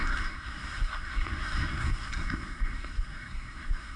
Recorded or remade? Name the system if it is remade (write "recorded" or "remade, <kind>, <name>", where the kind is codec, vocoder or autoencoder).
remade, codec, SNAC